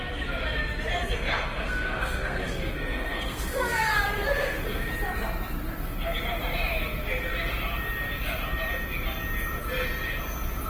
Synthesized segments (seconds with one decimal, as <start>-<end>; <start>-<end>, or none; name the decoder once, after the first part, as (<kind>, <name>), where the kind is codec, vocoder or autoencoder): 1.0-4.9 (codec, SNAC)